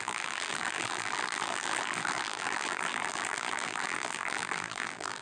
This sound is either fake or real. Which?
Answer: fake